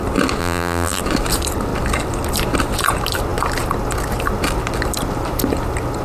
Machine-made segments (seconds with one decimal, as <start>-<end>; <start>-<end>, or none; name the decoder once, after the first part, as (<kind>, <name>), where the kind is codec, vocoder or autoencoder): 0.4-1.0 (vocoder, BigVGAN v2)